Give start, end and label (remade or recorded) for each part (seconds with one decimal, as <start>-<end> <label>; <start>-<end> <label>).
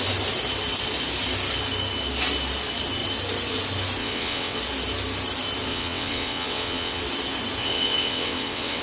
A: 0.0-4.0 recorded; 4.0-4.6 remade; 4.6-5.7 recorded; 5.7-7.0 remade; 7.0-7.6 recorded; 7.6-8.8 remade